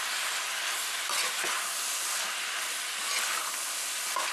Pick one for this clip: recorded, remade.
recorded